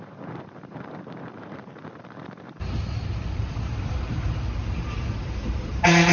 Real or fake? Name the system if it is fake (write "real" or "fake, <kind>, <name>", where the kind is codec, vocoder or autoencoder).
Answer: fake, vocoder, BigVGAN v2